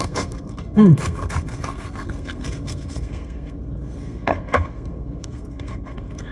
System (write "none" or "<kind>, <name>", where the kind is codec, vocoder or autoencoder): codec, SNAC